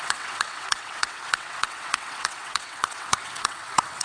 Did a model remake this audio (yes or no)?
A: yes